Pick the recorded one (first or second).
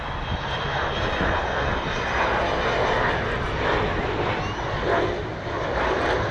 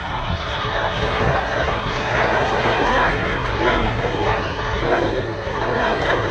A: first